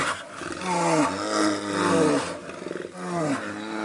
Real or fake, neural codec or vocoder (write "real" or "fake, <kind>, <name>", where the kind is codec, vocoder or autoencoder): real